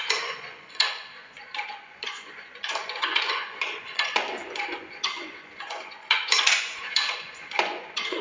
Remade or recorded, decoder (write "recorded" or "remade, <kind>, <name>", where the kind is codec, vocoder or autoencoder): remade, vocoder, Vocos